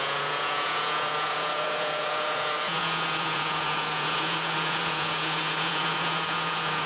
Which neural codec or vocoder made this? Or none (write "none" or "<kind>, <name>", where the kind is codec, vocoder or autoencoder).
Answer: vocoder, Vocos